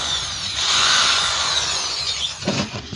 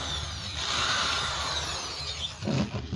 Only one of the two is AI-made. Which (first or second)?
first